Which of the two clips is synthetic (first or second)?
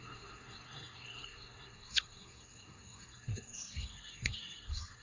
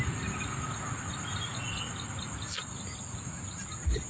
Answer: first